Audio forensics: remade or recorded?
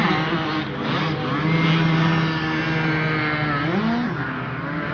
recorded